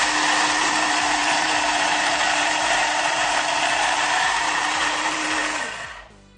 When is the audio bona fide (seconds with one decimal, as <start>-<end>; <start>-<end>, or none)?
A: 0.0-0.6; 5.4-6.4

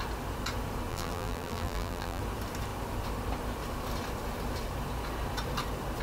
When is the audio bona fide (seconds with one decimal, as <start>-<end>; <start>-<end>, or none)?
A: 0.0-0.9; 2.2-6.0

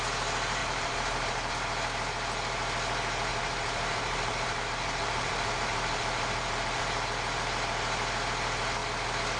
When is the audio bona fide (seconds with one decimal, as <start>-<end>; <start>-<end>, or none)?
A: 0.0-0.6; 1.5-3.3; 6.8-9.4

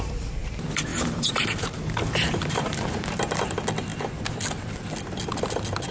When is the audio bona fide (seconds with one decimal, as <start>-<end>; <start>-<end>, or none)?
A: 0.0-0.9; 3.2-5.9

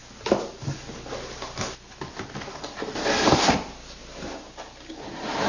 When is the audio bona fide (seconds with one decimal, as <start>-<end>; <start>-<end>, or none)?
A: 0.0-3.3; 4.0-4.9

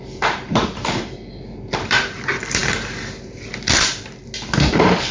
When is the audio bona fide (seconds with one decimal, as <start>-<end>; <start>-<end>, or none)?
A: 2.6-5.1

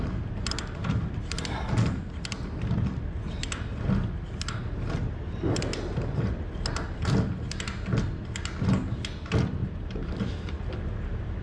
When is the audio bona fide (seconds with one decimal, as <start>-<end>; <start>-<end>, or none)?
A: 0.0-9.6